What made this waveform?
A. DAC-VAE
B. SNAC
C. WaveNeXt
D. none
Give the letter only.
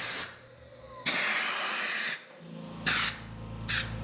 D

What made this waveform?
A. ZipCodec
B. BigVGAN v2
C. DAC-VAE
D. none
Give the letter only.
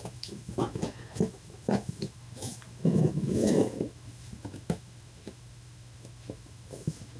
C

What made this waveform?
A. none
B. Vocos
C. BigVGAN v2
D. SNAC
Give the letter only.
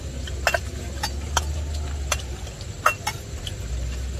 A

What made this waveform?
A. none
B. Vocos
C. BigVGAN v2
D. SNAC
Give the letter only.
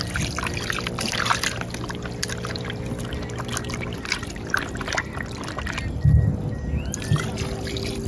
A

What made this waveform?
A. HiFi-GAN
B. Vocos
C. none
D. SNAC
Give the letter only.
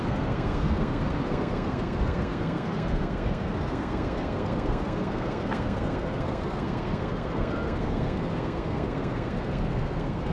D